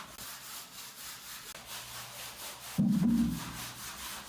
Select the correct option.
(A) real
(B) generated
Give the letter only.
A